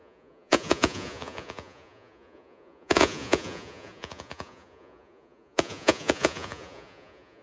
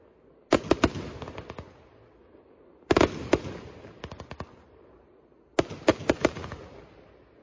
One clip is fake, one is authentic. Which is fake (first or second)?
first